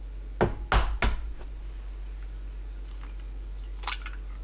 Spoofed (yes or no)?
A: no